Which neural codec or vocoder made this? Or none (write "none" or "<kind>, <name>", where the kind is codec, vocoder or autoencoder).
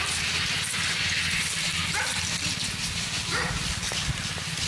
none